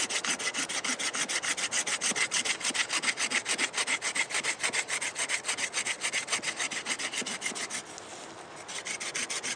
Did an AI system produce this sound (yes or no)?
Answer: no